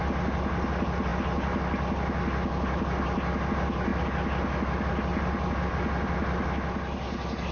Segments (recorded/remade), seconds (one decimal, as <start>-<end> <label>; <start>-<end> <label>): 0.0-7.5 recorded